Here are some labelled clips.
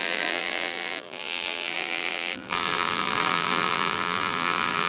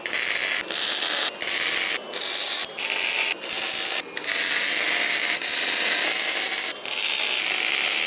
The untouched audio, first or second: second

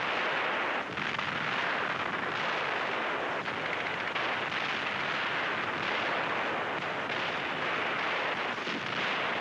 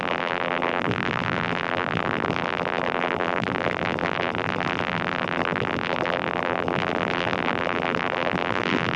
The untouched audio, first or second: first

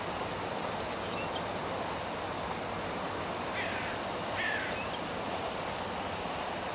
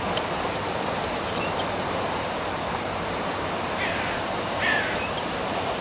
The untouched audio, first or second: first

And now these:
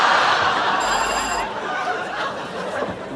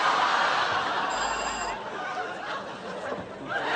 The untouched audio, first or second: second